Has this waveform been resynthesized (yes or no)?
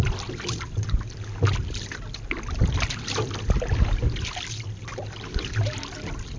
no